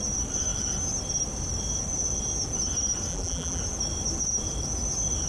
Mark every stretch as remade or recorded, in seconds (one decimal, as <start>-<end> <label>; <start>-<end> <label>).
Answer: 0.0-3.1 recorded; 3.1-3.6 remade; 3.6-5.3 recorded